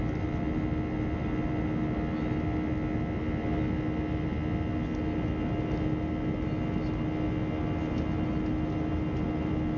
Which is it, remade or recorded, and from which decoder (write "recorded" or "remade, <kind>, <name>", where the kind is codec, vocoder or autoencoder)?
recorded